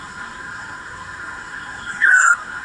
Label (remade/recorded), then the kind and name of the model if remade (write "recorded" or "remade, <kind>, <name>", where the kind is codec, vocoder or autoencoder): remade, codec, SNAC